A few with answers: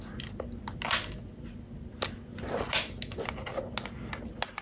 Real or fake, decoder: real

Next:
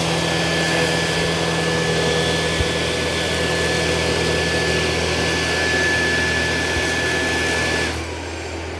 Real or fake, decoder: real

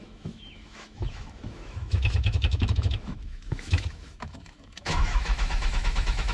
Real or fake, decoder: fake, autoencoder, DAC-VAE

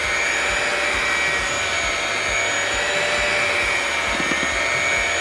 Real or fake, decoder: fake, vocoder, BigVGAN v2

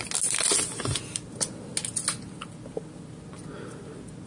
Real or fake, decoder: real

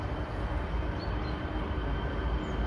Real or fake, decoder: real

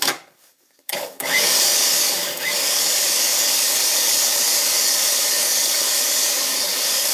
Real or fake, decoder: fake, codec, DAC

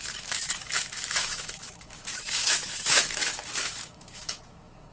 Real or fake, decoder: fake, autoencoder, DAC-VAE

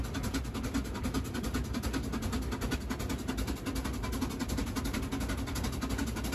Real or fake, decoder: real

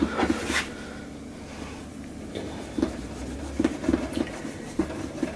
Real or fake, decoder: real